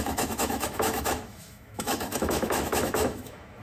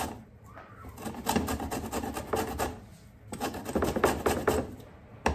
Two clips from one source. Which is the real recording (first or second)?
second